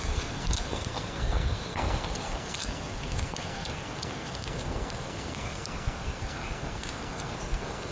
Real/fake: fake